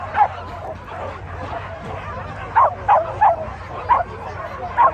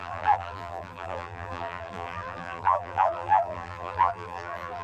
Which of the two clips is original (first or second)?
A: first